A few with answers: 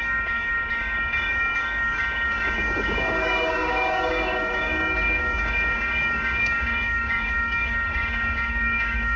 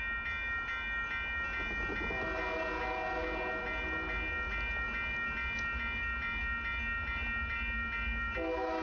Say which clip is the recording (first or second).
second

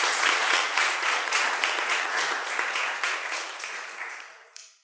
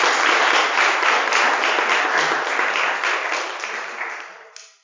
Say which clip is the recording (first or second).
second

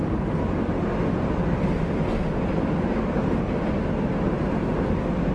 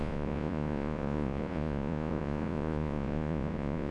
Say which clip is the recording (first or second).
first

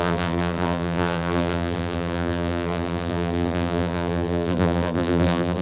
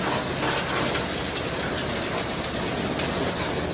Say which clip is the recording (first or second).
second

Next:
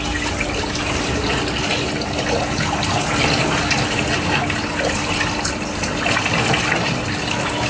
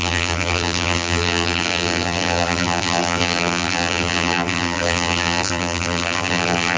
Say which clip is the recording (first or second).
first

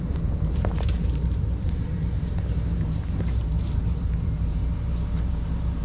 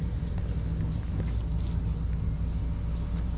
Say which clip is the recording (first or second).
second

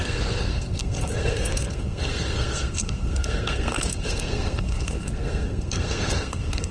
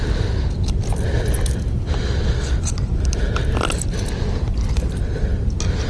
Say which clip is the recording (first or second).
second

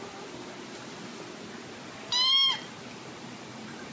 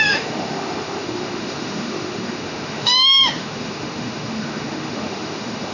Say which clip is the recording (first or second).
first